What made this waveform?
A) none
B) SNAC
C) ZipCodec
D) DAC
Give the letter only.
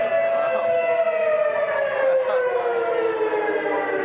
A